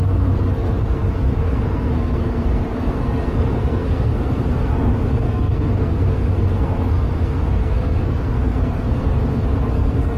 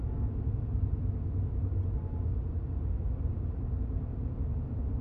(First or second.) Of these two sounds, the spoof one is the first